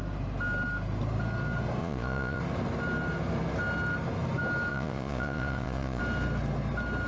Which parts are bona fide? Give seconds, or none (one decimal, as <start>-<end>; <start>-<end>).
0.0-1.8; 2.4-4.7; 6.0-7.1